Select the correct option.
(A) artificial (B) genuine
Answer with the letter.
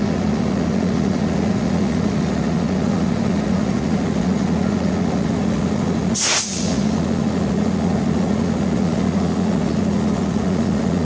A